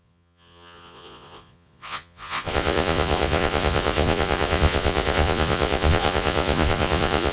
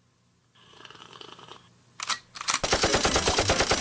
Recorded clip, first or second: second